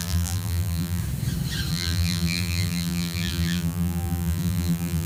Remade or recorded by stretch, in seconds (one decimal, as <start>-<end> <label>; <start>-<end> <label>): 0.0-1.0 remade; 1.0-1.7 recorded; 1.7-5.1 remade